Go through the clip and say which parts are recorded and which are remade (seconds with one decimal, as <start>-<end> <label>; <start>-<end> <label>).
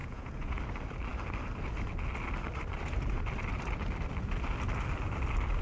0.0-0.6 remade; 0.6-5.6 recorded